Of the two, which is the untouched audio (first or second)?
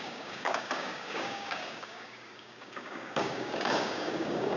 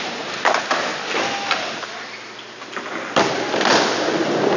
second